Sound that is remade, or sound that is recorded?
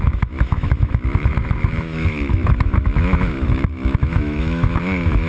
remade